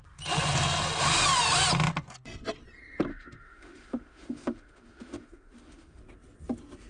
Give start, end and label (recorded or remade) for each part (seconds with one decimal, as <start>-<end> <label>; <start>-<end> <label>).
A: 0.0-3.1 recorded; 3.1-6.0 remade; 6.0-6.9 recorded